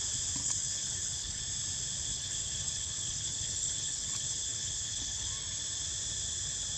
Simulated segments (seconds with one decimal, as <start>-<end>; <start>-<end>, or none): 0.4-1.4; 2.1-5.3